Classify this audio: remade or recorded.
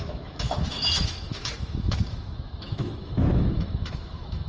remade